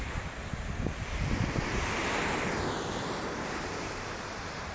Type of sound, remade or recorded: recorded